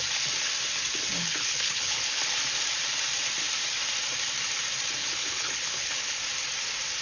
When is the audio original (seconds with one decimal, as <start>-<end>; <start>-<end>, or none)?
0.0-1.2; 2.3-5.0; 6.2-7.0